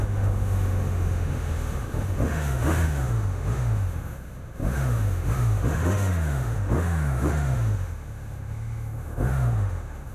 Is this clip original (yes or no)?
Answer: no